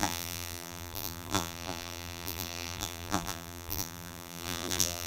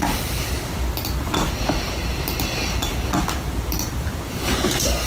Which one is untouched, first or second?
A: second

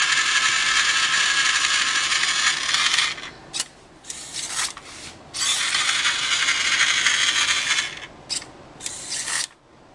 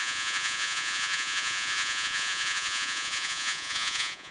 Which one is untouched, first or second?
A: first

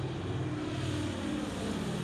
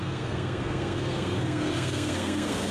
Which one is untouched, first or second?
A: first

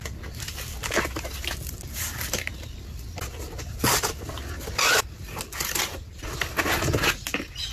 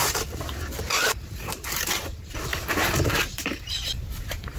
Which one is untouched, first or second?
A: first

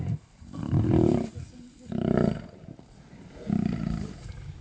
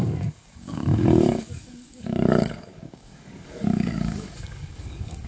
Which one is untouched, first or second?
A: first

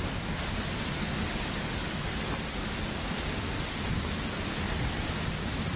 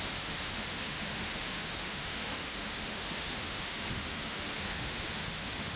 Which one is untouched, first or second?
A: first